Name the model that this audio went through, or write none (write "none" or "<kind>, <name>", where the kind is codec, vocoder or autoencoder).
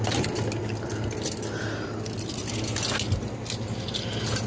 none